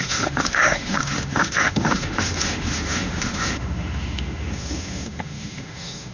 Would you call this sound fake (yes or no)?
yes